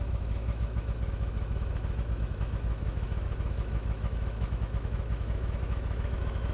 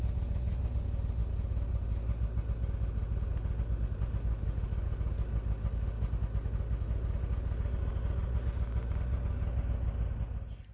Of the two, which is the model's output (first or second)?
first